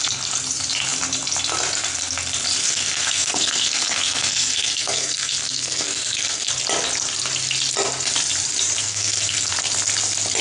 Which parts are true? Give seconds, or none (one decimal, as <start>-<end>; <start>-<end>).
0.0-2.6; 6.5-8.8; 9.5-10.4